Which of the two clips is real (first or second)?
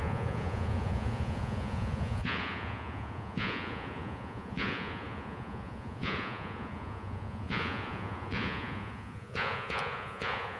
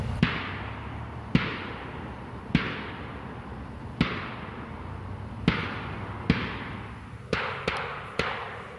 second